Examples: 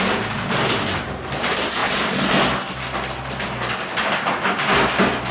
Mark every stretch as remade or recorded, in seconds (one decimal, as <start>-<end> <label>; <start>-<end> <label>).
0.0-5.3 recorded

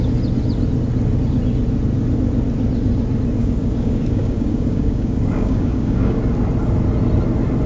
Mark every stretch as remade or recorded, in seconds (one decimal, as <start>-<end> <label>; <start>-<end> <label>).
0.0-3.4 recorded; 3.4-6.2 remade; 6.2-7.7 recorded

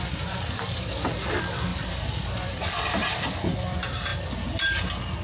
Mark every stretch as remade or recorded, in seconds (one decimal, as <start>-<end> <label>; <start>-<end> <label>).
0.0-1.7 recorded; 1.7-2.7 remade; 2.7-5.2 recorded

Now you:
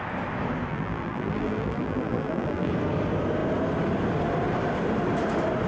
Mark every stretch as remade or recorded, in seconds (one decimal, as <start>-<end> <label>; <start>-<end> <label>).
0.0-0.7 recorded; 0.7-2.7 remade; 2.7-5.7 recorded

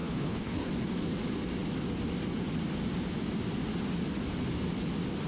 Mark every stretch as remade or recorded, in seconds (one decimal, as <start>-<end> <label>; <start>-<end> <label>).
0.0-0.7 remade; 0.7-5.3 recorded